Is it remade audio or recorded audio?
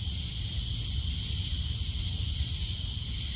recorded